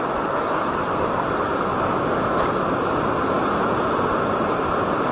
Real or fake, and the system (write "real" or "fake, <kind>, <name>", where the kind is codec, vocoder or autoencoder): real